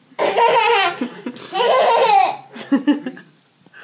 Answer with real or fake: real